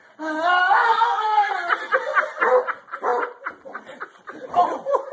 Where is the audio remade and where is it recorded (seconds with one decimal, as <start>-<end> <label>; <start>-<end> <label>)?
0.0-0.6 recorded; 0.6-1.5 remade; 1.5-5.1 recorded